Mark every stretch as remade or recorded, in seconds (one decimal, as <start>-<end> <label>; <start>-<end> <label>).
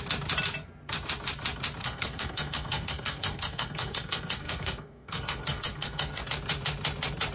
0.0-1.8 recorded; 1.8-6.2 remade; 6.2-7.3 recorded